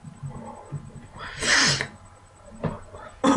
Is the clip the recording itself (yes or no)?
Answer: yes